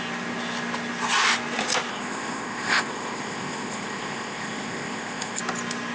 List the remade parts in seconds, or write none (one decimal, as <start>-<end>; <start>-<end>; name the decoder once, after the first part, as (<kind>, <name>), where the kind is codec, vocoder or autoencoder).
1.9-5.4 (codec, ZipCodec)